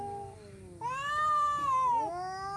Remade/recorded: recorded